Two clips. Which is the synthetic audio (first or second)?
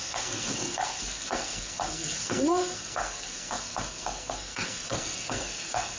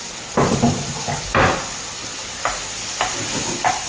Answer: first